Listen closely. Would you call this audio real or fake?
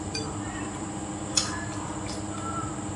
fake